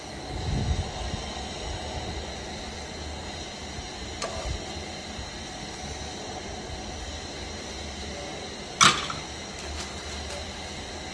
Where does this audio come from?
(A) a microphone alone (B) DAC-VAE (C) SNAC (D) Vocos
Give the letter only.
A